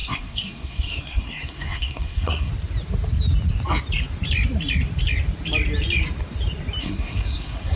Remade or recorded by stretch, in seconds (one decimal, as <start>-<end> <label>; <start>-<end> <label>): 0.0-2.5 remade; 2.5-6.8 recorded; 6.8-7.8 remade